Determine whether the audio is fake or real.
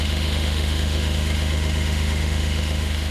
fake